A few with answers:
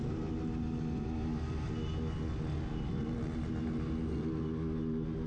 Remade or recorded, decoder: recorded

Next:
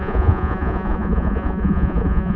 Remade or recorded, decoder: remade, vocoder, Vocos